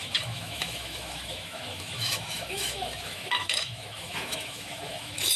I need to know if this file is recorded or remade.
remade